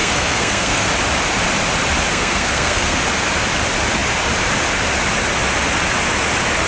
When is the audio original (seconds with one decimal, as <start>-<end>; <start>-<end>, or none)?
0.9-2.1; 3.0-6.7